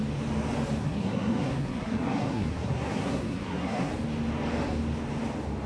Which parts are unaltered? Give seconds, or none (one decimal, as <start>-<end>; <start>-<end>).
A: 0.0-0.8; 3.9-5.7